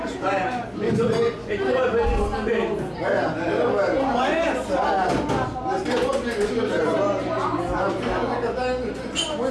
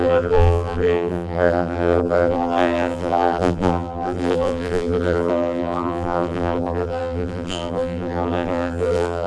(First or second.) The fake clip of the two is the second